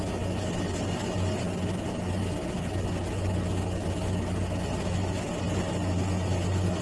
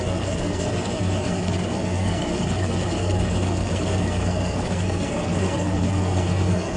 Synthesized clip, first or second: second